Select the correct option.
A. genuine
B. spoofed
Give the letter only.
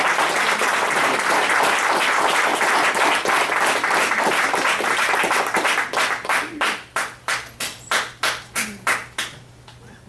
A